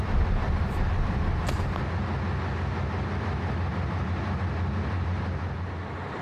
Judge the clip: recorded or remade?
recorded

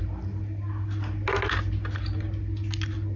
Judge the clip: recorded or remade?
recorded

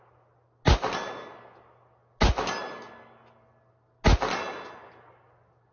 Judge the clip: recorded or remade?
recorded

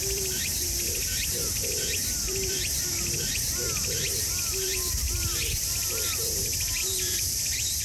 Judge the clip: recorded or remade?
remade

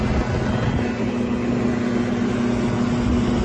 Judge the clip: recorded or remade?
recorded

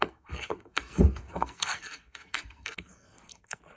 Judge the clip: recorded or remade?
remade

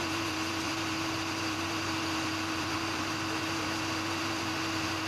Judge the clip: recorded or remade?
remade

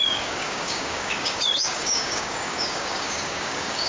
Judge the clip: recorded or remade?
remade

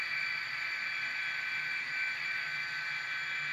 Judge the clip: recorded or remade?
recorded